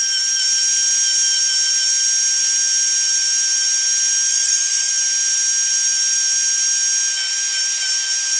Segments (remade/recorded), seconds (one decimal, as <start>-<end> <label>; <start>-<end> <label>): 0.0-4.3 recorded; 4.3-4.9 remade; 4.9-8.4 recorded